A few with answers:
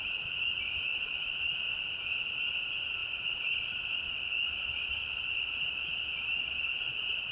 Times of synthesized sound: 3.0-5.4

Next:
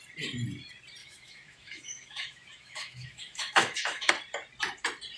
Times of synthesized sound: 1.0-4.1

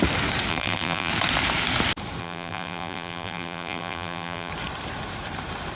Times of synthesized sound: 0.5-1.1; 2.2-4.5

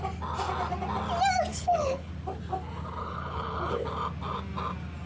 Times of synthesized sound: 1.5-2.1; 3.0-3.8

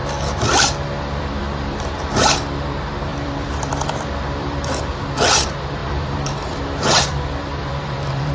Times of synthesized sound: 0.0-2.1; 3.1-5.0; 5.8-8.3

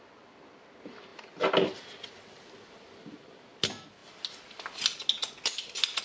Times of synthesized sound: none

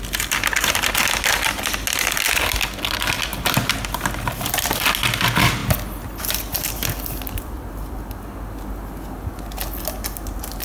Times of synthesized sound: none